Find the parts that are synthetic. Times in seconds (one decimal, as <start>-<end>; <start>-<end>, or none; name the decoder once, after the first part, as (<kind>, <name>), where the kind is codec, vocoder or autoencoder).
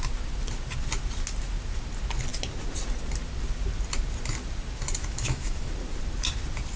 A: 5.0-5.7 (autoencoder, DAC-VAE)